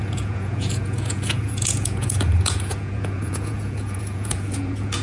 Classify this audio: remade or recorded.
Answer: remade